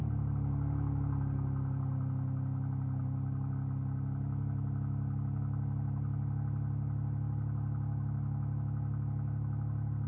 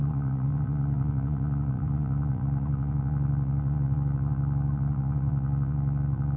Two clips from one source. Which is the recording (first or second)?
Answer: first